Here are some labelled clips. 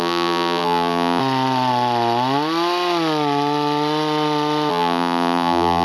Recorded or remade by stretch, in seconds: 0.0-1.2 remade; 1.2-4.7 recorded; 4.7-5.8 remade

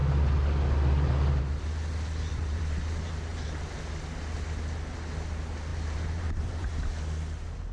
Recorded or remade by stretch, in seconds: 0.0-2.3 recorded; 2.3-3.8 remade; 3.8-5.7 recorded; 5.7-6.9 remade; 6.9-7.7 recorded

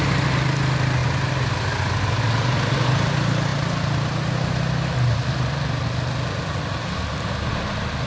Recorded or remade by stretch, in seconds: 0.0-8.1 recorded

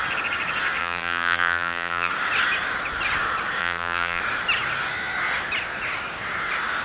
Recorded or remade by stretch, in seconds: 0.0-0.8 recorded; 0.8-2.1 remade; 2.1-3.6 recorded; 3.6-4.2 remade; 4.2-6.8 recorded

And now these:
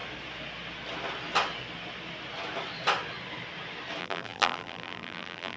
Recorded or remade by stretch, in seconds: 0.0-4.0 recorded; 4.0-5.6 remade

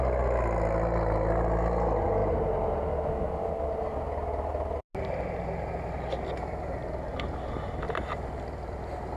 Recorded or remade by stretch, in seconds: 0.0-9.2 recorded

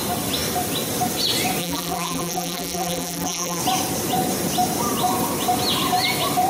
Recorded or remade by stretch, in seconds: 0.0-1.6 recorded; 1.6-3.6 remade; 3.6-6.5 recorded